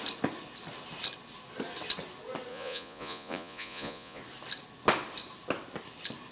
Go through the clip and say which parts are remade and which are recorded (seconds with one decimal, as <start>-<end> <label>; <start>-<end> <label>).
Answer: 0.0-2.5 recorded; 2.5-4.2 remade; 4.2-6.3 recorded